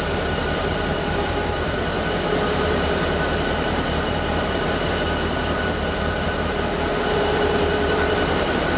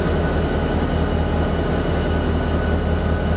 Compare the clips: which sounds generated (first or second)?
first